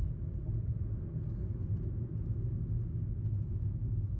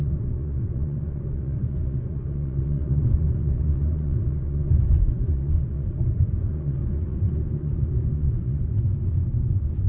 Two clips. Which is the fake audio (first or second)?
second